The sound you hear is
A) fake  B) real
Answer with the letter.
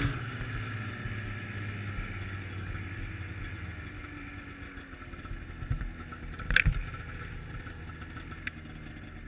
B